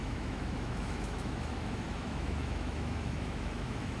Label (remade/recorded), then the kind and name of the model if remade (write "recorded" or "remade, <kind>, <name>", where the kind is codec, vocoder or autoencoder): remade, autoencoder, DAC-VAE